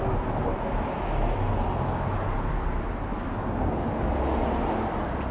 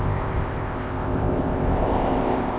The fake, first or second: second